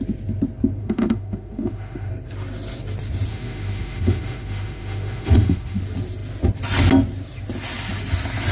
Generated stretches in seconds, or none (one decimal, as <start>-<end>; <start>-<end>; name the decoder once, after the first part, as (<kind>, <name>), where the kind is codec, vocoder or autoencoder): 0.8-2.1 (autoencoder, DAC-VAE); 3.3-5.8